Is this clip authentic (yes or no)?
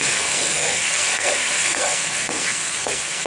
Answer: no